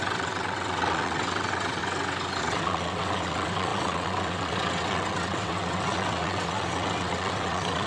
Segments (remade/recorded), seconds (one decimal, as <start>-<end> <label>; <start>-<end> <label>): 0.0-1.8 remade; 1.8-2.4 recorded; 2.4-7.9 remade